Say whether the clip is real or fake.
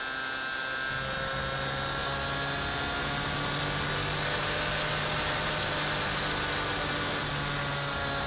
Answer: real